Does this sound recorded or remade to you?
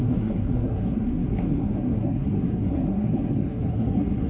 remade